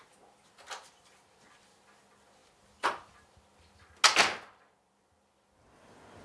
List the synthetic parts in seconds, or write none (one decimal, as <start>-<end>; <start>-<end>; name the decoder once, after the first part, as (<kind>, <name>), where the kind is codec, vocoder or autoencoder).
none